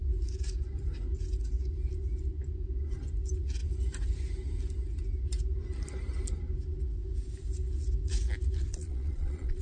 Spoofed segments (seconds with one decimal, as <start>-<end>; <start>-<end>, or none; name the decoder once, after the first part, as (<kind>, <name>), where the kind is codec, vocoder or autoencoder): 8.7-9.6 (vocoder, Vocos)